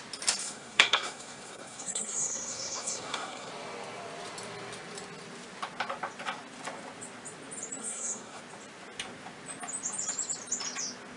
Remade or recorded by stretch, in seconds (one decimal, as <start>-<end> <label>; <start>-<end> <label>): 0.0-0.4 recorded; 0.4-3.5 remade; 3.5-7.8 recorded; 7.8-8.4 remade; 8.4-11.2 recorded